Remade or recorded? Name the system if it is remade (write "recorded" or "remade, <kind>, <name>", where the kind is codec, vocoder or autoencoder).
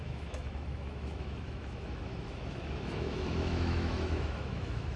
remade, autoencoder, DAC-VAE